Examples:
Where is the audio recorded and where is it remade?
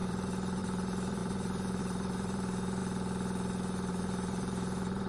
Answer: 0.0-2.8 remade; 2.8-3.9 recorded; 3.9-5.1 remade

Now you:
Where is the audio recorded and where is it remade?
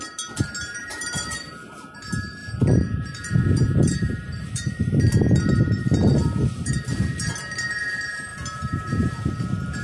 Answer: 0.0-0.8 recorded; 0.8-1.5 remade; 1.5-2.4 recorded; 2.4-7.3 remade; 7.3-8.3 recorded; 8.3-9.4 remade; 9.4-9.8 recorded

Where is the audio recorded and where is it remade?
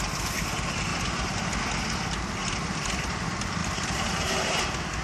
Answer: 0.0-0.9 recorded; 0.9-1.5 remade; 1.5-2.4 recorded; 2.4-3.2 remade; 3.2-3.6 recorded; 3.6-4.6 remade; 4.6-5.0 recorded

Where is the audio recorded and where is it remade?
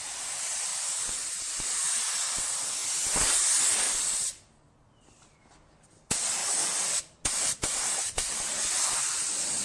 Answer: 0.0-0.7 recorded; 0.7-2.2 remade; 2.2-6.4 recorded; 6.4-8.4 remade; 8.4-9.6 recorded